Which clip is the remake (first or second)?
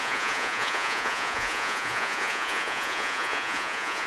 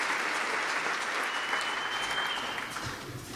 first